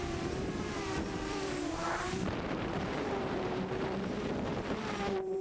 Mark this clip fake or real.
fake